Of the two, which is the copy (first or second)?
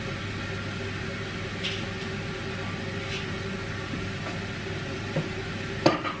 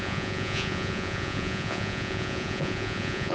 second